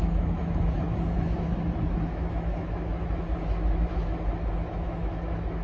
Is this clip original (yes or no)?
no